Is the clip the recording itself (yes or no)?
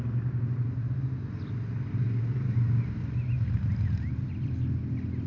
yes